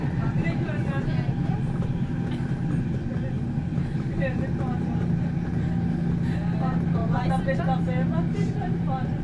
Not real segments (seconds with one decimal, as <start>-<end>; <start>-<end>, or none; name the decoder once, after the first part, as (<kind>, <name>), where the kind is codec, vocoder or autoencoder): 1.4-2.1 (vocoder, BigVGAN v2); 7.0-7.6